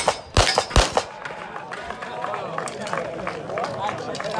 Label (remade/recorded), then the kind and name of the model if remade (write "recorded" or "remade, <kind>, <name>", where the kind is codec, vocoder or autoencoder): recorded